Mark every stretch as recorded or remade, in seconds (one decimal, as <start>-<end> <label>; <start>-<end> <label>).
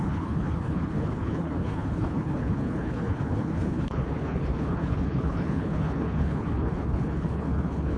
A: 0.0-8.0 remade